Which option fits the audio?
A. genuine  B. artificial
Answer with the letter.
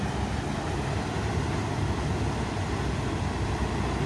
B